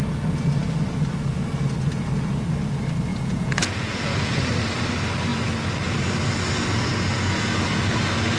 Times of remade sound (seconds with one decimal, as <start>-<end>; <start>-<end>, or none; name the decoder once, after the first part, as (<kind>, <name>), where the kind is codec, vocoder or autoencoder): 3.1-4.4 (vocoder, Vocos)